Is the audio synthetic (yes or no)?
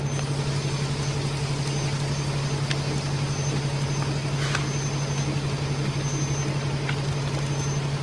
no